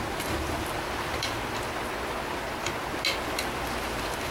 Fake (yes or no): no